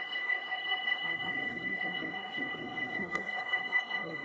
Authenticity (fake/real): fake